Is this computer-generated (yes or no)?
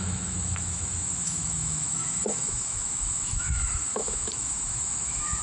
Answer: yes